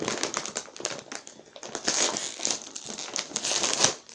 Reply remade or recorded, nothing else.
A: recorded